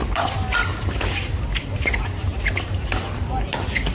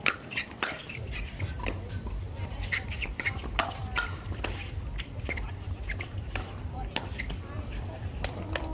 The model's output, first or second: second